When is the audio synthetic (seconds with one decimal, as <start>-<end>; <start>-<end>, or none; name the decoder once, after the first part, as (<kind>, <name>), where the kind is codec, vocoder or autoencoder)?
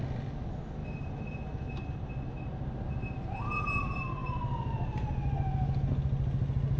none